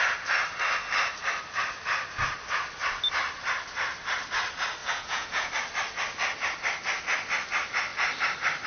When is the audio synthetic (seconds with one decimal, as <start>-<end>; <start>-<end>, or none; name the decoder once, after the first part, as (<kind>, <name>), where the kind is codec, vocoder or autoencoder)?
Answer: 4.8-5.5 (vocoder, Vocos)